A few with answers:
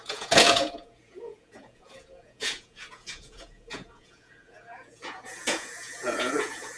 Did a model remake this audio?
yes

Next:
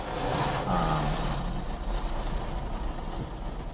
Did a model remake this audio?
no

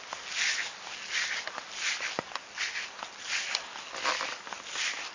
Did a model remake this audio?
no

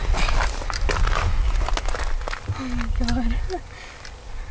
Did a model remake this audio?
no